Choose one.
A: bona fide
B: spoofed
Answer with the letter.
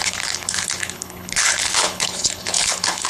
B